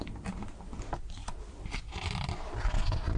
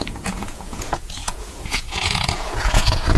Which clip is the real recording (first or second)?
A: first